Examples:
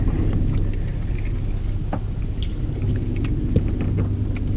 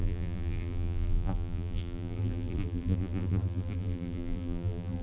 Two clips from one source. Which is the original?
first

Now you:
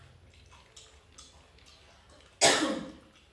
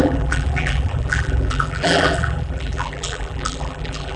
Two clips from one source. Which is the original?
first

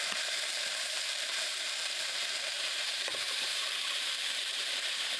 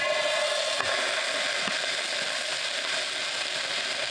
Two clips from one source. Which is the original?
second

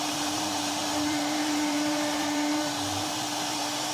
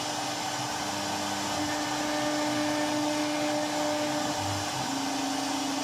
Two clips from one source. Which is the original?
second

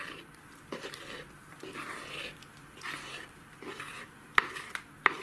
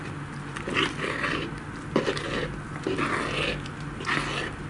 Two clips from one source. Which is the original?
second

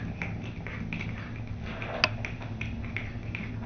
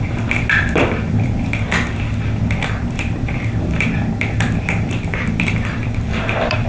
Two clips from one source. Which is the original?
first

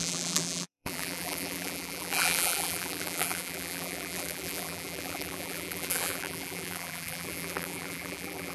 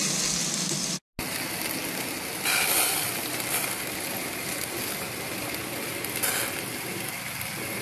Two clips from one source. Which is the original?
second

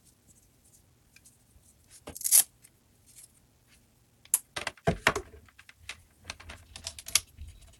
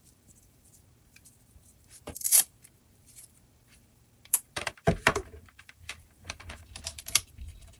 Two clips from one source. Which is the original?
first